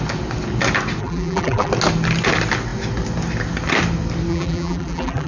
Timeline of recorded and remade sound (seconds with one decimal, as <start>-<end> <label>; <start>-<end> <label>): 0.0-1.0 recorded; 1.0-1.7 remade; 1.7-4.3 recorded; 4.3-5.3 remade